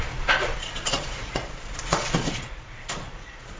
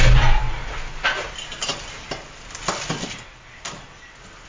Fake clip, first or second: first